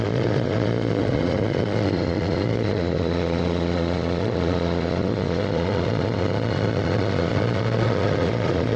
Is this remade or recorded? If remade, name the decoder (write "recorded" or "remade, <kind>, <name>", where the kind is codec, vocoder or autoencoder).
remade, vocoder, Vocos